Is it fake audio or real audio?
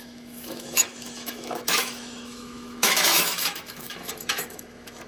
fake